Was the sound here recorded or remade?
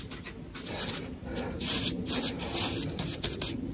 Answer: recorded